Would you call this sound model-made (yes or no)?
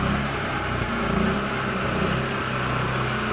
no